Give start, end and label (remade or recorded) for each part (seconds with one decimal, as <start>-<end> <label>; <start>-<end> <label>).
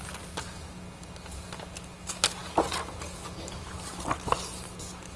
0.0-5.2 recorded